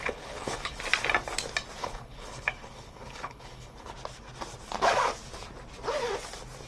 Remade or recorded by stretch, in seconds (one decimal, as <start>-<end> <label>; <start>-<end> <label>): 0.0-0.8 remade; 0.8-1.8 recorded; 1.8-3.9 remade; 3.9-6.7 recorded